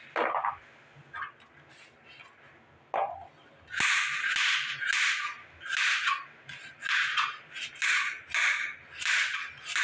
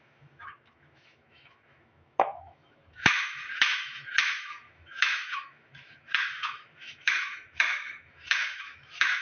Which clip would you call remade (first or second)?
second